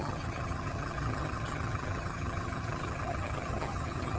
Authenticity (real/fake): fake